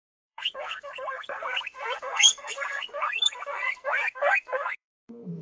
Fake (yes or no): yes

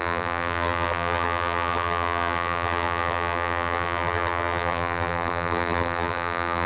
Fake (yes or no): yes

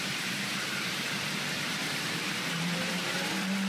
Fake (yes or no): yes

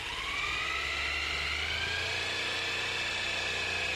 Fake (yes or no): no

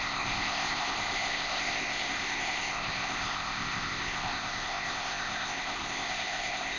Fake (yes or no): yes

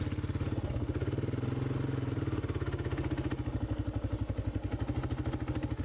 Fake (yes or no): no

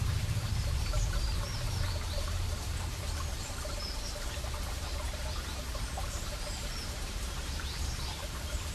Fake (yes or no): yes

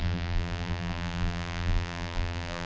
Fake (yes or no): yes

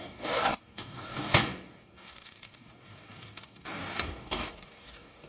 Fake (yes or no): yes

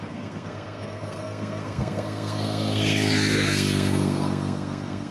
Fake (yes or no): yes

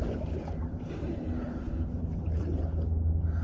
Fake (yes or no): yes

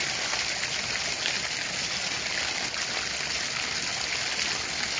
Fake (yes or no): no